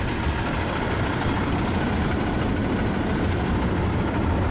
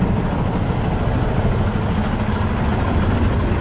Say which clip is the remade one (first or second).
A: first